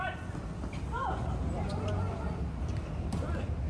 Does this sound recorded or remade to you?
recorded